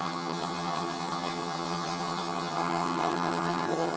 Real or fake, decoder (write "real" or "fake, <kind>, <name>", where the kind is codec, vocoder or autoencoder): fake, vocoder, HiFi-GAN